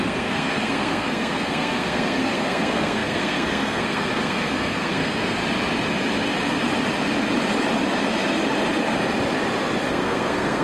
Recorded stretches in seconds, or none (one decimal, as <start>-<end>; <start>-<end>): 5.4-9.9